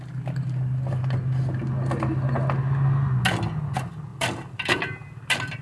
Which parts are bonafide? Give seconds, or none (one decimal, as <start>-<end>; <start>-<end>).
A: 0.0-4.1